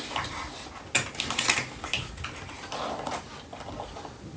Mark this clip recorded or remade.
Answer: recorded